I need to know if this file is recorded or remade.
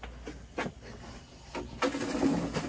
recorded